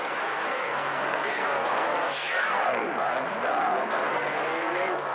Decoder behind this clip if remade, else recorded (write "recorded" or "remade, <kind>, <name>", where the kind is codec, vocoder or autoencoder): remade, codec, SNAC